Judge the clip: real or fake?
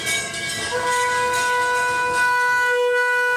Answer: fake